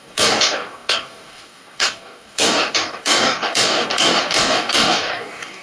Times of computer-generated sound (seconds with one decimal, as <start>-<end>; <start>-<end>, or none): 0.0-5.6

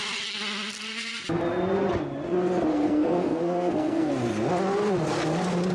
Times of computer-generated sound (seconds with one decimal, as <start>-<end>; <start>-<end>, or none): 2.7-4.1

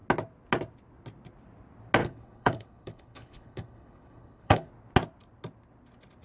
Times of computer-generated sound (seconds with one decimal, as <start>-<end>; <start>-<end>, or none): 2.0-4.7

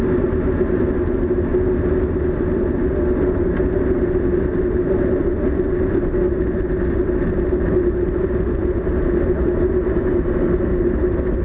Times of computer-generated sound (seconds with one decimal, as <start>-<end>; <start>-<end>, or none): none

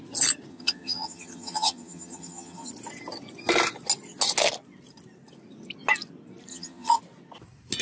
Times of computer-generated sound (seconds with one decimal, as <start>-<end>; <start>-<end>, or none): 0.5-2.7; 6.5-7.0

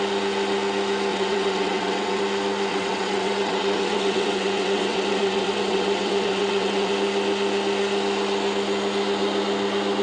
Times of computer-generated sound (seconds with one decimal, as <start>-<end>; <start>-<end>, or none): 1.1-2.2; 2.7-6.9

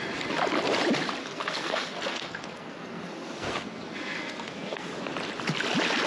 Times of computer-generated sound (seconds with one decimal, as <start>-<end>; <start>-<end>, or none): 1.2-4.9

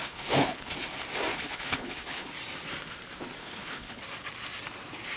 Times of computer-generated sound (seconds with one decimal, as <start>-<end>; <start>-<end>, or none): 0.0-0.7; 1.3-2.3; 3.4-4.0